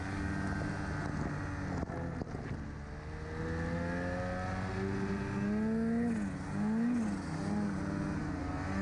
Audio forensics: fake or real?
real